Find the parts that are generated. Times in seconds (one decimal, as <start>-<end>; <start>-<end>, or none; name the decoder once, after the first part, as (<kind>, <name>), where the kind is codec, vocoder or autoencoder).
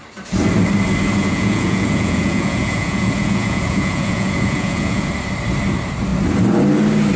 1.2-5.1 (vocoder, Vocos)